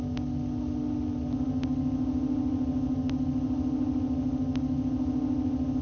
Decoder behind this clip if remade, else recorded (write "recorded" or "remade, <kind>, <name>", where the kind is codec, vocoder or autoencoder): recorded